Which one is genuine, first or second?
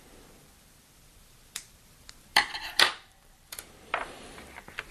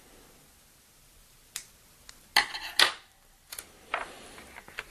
second